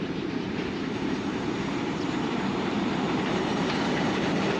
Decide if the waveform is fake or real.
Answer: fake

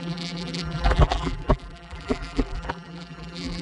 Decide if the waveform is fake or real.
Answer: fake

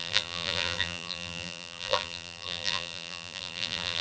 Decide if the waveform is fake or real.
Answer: fake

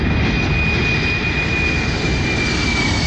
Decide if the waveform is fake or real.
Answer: real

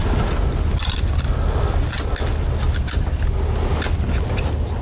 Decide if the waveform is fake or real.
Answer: real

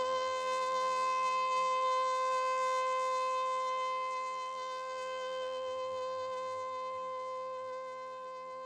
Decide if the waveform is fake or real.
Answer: fake